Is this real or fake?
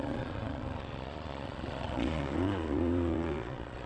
fake